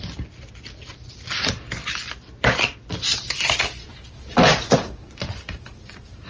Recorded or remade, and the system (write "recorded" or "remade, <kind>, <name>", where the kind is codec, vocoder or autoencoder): remade, vocoder, BigVGAN v2